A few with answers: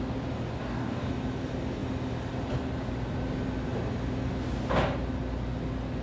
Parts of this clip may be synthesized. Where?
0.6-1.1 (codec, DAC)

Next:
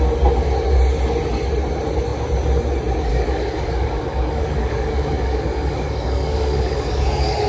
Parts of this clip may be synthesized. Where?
3.1-7.5 (codec, DAC)